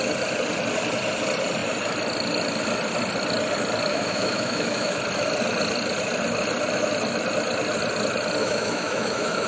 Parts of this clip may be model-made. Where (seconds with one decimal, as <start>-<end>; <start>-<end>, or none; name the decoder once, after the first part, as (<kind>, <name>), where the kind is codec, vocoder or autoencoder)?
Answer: 3.9-5.0 (autoencoder, DAC-VAE); 8.4-9.5